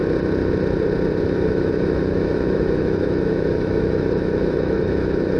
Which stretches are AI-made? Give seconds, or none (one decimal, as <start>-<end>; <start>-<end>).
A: 1.2-5.4